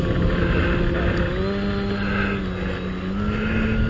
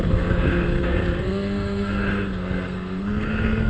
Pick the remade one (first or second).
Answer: second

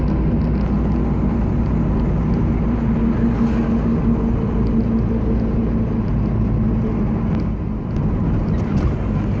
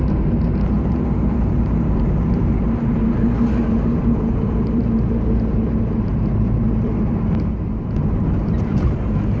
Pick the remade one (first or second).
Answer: second